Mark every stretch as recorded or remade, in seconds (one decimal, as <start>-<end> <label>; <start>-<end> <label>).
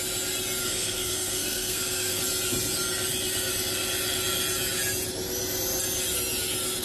0.0-0.6 recorded; 0.6-2.2 remade; 2.2-6.8 recorded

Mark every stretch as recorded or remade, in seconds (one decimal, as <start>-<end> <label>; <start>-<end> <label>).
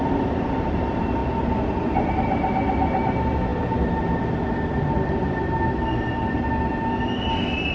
0.0-7.7 recorded